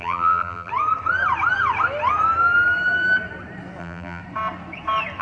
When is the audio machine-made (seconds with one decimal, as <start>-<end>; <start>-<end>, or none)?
0.0-0.7; 3.8-4.2